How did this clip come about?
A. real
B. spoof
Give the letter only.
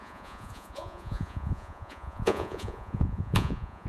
B